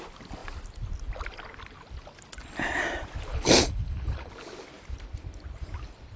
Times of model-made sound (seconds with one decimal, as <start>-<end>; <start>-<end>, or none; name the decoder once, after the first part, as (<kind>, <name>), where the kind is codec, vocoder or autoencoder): 3.3-4.3 (codec, HILCodec)